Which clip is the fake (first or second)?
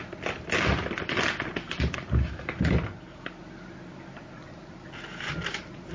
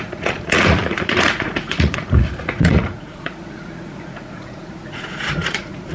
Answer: second